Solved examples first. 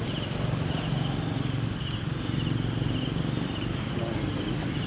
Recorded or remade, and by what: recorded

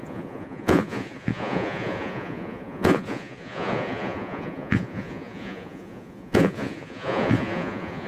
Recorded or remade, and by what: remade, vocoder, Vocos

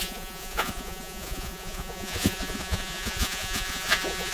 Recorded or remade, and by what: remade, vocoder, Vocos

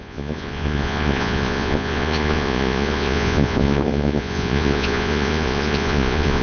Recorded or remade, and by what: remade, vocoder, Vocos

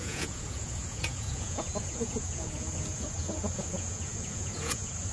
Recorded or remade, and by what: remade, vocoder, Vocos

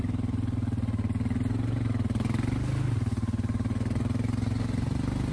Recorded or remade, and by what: recorded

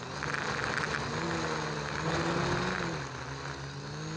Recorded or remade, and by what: recorded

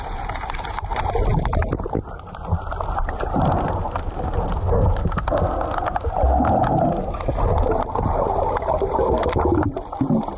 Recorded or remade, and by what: recorded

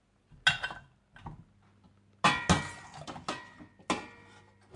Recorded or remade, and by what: recorded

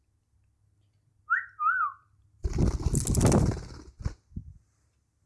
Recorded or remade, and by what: recorded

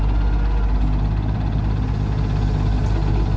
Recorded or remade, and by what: recorded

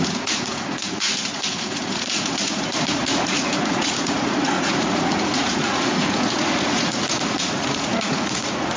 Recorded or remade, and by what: remade, vocoder, Vocos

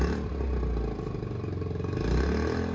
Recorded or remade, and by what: recorded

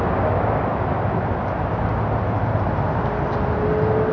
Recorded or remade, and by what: recorded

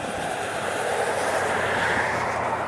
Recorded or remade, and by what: recorded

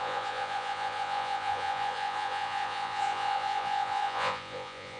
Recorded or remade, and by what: remade, vocoder, Vocos